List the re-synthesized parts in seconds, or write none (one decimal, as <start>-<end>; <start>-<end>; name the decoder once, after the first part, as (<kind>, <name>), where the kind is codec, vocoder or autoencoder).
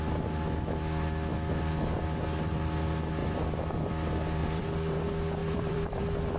3.2-3.9 (vocoder, BigVGAN v2); 4.4-5.0; 5.4-6.0